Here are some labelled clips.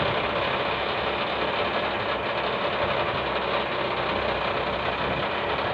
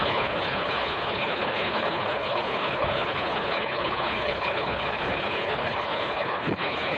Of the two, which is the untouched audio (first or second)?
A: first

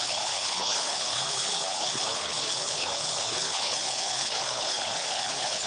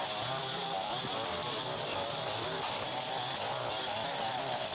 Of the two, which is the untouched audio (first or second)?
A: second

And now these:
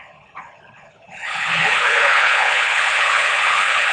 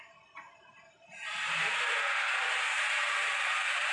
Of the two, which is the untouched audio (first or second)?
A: second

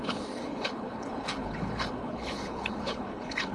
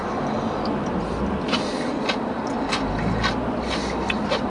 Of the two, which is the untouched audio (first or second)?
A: second